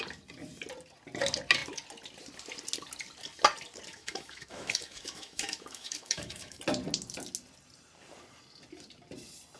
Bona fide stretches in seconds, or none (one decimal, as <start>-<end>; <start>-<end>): 0.0-3.9; 6.6-9.6